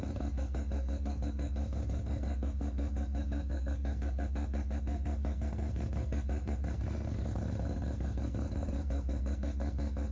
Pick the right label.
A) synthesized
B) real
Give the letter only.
A